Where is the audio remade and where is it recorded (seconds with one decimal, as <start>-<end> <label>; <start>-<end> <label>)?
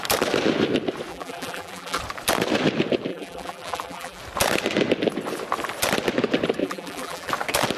0.0-1.1 recorded; 1.1-2.0 remade; 2.0-3.1 recorded; 3.1-4.2 remade; 4.2-6.6 recorded; 6.6-7.3 remade; 7.3-7.8 recorded